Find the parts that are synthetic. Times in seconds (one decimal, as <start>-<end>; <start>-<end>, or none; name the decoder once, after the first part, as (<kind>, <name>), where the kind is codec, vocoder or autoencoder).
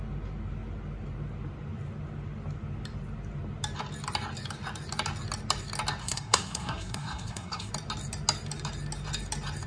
6.0-7.7 (codec, SNAC)